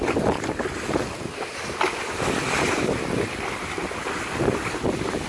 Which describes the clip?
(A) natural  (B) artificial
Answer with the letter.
A